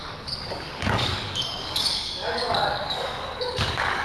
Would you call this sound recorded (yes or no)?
no